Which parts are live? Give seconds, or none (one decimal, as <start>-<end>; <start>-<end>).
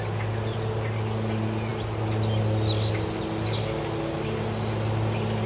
0.0-5.5